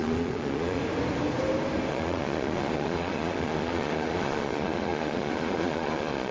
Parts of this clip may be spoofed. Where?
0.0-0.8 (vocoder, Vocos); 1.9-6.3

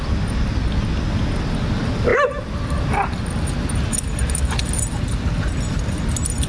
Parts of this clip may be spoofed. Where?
none

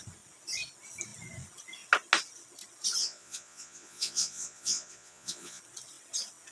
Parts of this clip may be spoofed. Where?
3.0-5.6 (vocoder, Vocos)